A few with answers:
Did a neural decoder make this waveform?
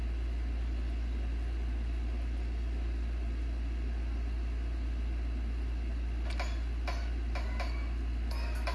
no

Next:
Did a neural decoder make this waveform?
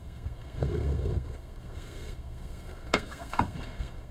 yes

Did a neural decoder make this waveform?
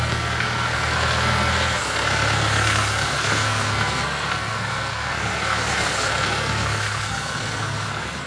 yes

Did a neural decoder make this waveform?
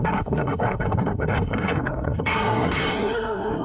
yes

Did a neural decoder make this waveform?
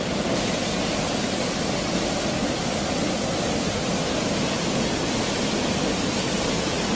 no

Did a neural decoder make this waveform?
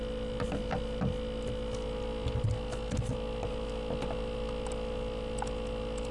no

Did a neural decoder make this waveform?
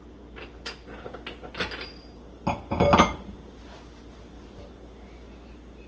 no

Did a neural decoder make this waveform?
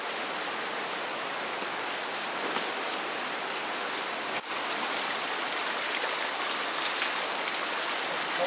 no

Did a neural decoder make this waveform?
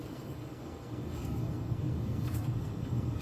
yes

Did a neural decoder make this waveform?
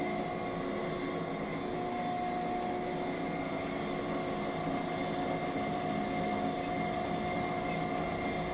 no